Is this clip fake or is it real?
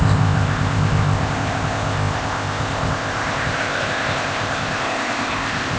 fake